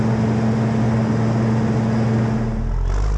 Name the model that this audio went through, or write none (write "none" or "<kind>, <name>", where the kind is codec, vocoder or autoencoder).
none